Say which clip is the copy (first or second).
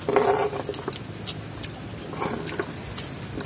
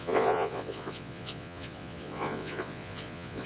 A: second